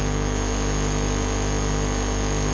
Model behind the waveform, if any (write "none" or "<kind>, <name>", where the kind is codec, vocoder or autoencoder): none